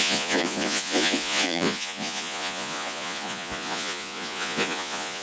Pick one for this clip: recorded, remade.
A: remade